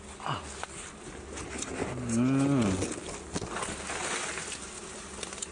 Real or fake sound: real